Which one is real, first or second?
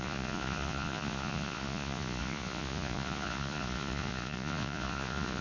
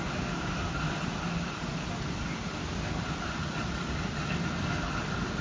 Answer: second